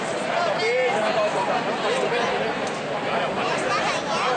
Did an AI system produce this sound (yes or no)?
no